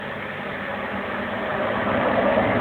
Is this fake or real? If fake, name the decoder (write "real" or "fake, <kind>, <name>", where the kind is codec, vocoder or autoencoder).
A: real